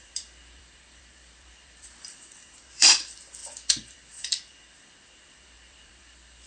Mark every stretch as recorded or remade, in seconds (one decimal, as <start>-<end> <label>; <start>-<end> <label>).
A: 0.0-6.5 remade